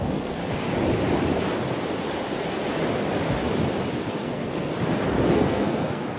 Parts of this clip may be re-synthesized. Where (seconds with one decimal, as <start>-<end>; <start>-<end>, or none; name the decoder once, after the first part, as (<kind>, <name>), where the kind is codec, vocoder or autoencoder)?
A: 0.0-0.4 (codec, SNAC); 4.1-4.7; 5.3-6.2